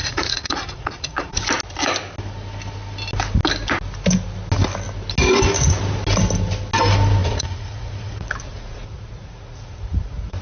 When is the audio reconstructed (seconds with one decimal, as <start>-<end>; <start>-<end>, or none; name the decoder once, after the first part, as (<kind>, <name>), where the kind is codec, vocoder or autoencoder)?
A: 0.0-1.4 (vocoder, Vocos); 7.2-10.4